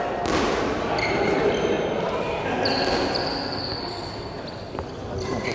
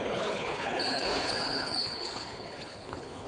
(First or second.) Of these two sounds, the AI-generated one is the second